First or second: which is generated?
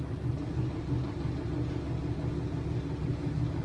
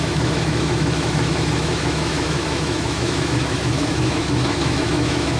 second